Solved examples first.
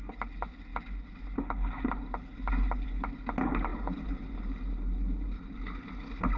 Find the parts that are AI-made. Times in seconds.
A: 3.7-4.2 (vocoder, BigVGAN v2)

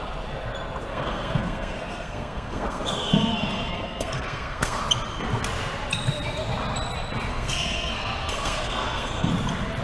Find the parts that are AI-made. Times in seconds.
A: 0.9-4.8 (codec, SNAC); 7.3-9.3

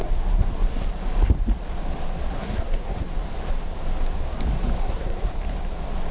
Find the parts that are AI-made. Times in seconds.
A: 0.0-0.9 (codec, SNAC); 2.3-3.1; 4.8-5.3

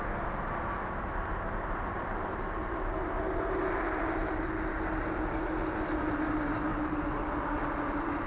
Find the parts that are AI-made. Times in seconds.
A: none

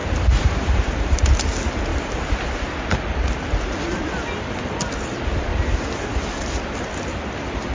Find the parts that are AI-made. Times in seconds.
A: 0.0-1.5 (vocoder, BigVGAN v2); 7.1-7.7

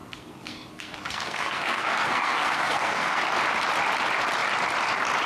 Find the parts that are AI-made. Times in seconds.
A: 0.0-3.2 (codec, SNAC)

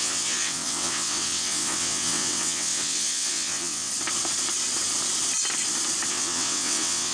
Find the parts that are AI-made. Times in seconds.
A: 0.0-3.9 (vocoder, WaveNeXt); 6.1-7.1